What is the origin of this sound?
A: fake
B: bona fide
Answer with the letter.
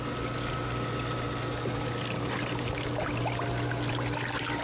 B